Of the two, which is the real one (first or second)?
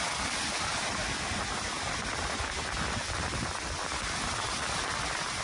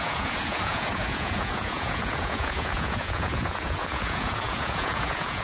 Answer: first